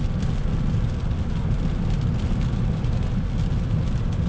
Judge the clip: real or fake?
real